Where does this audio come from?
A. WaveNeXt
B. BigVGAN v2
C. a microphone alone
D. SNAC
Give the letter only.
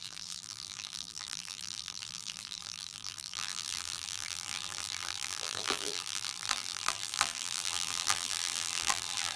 B